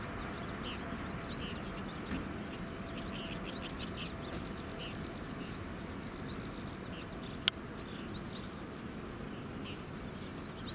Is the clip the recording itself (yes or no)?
yes